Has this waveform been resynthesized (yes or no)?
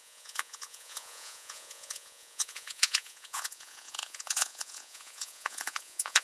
yes